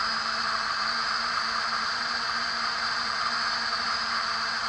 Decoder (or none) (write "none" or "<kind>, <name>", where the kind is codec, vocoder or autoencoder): vocoder, BigVGAN v2